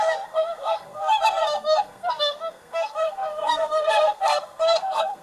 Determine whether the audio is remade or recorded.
remade